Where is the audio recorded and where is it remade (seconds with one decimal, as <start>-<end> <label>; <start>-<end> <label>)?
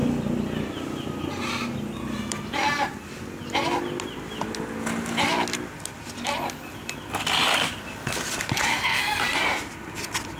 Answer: 0.0-8.7 recorded; 8.7-9.2 remade; 9.2-10.4 recorded